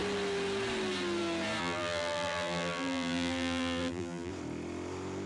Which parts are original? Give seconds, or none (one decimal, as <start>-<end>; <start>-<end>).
0.0-1.6; 4.3-5.3